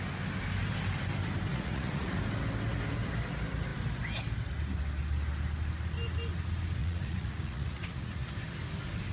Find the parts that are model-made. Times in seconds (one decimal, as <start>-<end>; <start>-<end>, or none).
1.5-2.2; 6.8-8.3